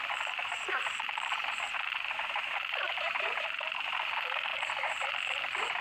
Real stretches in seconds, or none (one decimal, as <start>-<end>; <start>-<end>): 0.0-0.4; 3.9-4.5; 5.1-5.8